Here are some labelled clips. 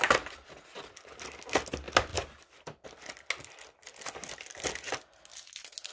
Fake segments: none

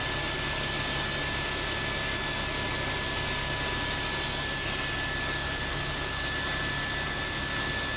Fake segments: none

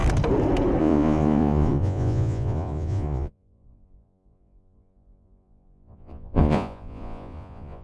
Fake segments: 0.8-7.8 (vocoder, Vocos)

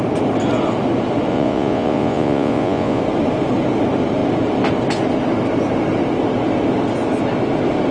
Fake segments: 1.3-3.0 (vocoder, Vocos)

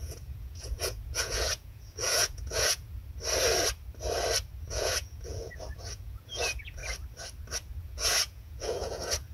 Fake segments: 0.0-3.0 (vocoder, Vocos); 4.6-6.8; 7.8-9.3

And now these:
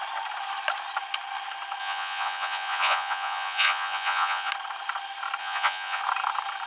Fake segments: 1.8-4.5 (vocoder, Vocos); 5.4-6.0

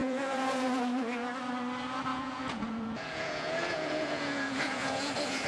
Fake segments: 0.0-1.3 (vocoder, Vocos); 2.1-5.5

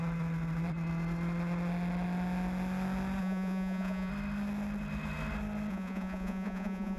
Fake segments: 3.2-4.1 (vocoder, Vocos); 5.7-7.0